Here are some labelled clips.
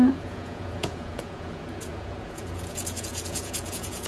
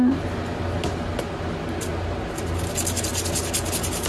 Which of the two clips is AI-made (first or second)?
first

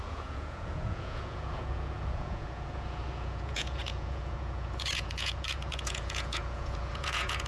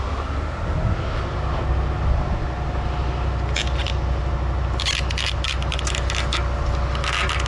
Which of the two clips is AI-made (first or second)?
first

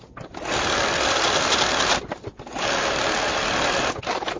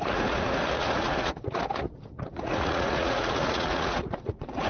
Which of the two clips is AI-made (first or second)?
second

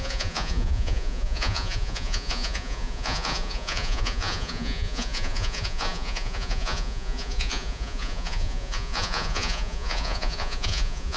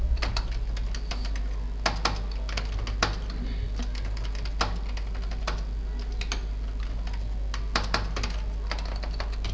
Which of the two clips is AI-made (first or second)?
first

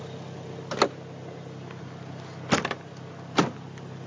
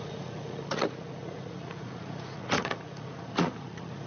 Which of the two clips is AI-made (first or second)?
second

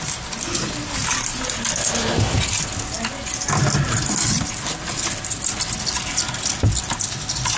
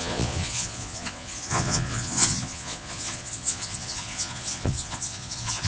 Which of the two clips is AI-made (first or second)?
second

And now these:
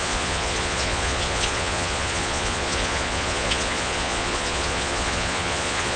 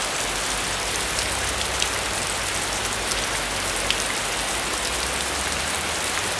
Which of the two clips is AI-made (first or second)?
first